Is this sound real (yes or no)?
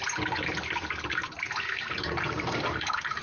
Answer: no